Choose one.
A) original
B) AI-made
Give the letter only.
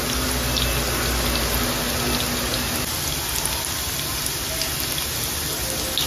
A